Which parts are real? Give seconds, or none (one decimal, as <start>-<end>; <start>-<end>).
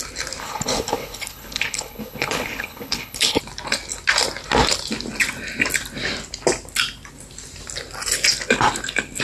0.0-0.4; 3.4-9.2